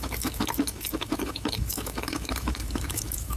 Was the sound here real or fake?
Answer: fake